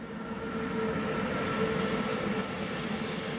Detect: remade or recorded recorded